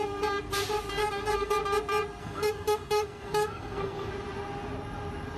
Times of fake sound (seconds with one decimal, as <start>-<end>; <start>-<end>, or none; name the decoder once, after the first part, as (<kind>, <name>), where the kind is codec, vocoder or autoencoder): 1.0-1.6 (codec, SNAC); 2.2-4.1